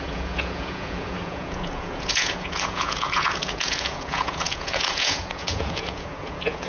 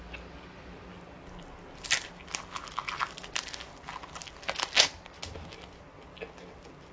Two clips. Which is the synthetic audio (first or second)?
first